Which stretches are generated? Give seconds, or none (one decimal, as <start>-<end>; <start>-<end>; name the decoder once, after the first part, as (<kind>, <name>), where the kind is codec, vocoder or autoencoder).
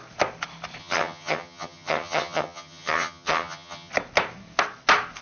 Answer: 0.8-3.9 (vocoder, HiFi-GAN)